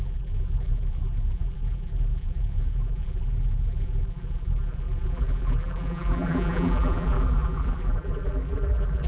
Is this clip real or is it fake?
fake